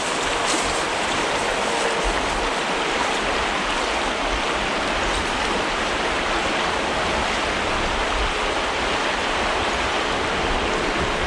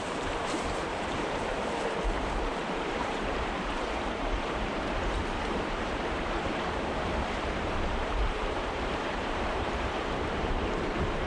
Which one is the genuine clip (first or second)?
first